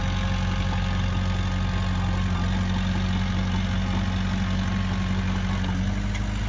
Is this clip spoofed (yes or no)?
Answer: no